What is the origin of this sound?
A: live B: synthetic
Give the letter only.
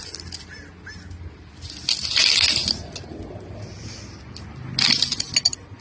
A